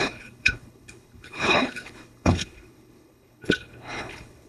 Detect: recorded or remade remade